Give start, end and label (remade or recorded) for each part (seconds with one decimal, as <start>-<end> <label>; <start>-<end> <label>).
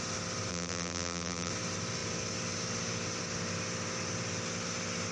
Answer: 0.0-0.5 recorded; 0.5-1.5 remade; 1.5-5.1 recorded